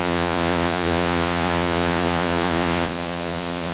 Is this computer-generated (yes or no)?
yes